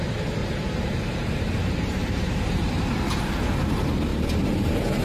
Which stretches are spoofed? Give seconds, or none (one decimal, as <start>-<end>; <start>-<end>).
0.4-2.9; 4.1-5.0